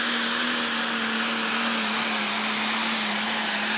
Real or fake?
real